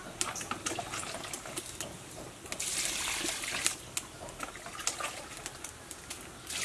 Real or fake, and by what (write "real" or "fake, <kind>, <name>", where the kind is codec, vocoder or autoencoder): real